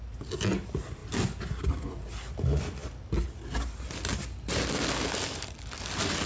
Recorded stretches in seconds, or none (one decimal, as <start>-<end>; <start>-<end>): 0.0-6.3